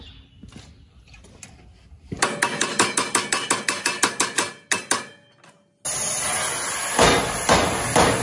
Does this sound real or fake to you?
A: real